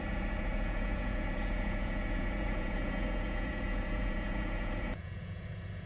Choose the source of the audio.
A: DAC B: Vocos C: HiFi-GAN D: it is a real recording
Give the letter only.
B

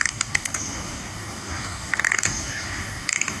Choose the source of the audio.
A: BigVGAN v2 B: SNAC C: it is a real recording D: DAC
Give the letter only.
D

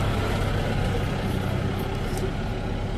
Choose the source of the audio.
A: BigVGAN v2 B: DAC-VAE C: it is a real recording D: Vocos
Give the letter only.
C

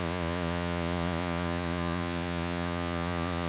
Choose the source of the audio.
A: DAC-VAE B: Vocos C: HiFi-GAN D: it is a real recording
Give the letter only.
B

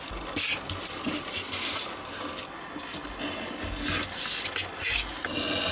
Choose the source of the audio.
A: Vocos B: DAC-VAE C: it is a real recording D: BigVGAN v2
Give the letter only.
C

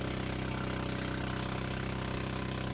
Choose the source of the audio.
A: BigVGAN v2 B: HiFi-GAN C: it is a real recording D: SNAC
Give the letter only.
C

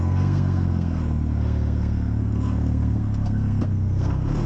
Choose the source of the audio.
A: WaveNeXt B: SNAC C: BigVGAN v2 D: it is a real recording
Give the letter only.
B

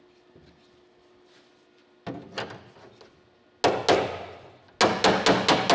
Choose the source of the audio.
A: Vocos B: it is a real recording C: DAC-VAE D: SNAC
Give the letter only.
B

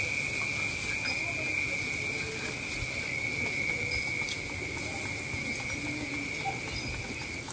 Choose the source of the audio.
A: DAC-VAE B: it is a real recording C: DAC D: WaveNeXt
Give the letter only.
B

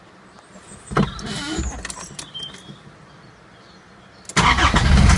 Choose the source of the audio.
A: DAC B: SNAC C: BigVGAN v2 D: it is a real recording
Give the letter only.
D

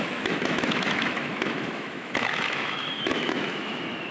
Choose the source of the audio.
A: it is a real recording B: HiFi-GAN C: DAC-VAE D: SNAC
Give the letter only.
C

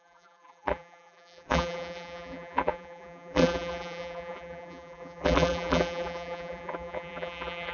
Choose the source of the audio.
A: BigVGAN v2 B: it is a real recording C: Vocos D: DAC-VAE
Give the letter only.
A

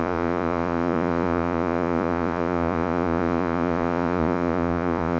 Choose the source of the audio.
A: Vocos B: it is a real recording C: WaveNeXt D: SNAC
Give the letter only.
A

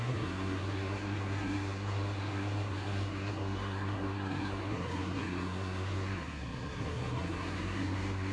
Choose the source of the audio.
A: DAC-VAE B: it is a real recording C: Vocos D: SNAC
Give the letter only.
D